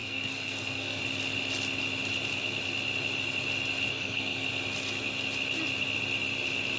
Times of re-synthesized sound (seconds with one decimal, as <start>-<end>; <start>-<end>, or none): 0.0-1.0; 3.9-4.5

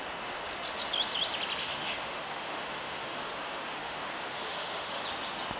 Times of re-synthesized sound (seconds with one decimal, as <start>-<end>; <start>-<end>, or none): 1.6-5.0